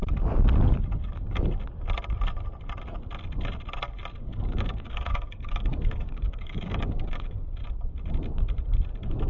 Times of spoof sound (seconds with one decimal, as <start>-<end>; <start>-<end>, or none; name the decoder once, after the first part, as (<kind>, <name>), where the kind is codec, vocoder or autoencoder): 4.2-7.4 (codec, DAC)